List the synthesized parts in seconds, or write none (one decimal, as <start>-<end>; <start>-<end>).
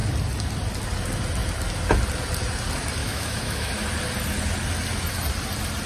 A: 3.0-3.7